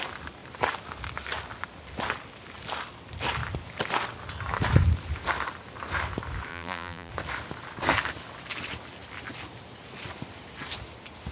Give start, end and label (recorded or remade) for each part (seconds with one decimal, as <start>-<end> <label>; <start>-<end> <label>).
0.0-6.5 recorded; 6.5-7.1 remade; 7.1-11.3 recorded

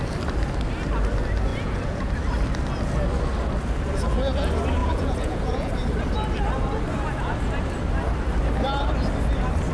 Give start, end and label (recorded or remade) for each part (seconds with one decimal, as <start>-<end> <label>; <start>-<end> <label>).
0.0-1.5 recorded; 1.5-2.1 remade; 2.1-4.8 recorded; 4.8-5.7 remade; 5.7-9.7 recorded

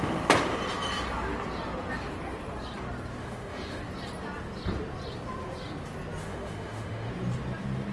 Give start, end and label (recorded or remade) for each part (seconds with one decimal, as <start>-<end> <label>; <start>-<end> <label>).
0.0-3.2 recorded; 3.2-3.8 remade; 3.8-6.2 recorded; 6.2-7.1 remade; 7.1-7.9 recorded

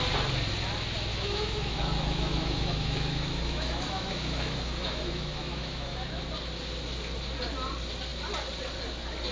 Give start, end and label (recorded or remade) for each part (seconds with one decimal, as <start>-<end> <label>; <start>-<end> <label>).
0.0-1.1 recorded; 1.1-6.2 remade; 6.2-9.3 recorded